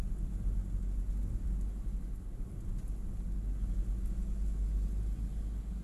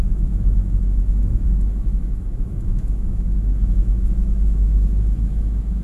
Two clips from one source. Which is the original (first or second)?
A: first